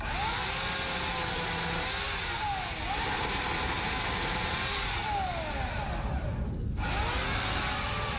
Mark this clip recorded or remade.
recorded